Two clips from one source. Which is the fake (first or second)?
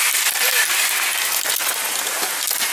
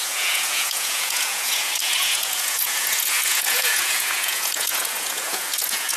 second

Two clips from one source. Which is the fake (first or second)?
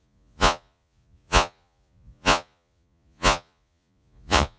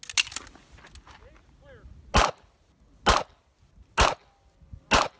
first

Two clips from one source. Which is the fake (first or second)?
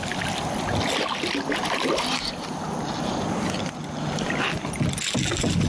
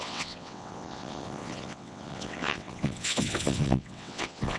second